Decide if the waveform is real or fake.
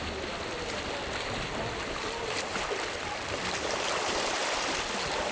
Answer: real